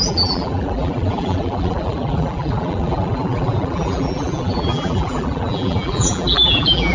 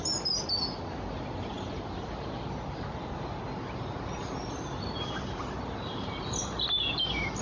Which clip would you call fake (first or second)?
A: first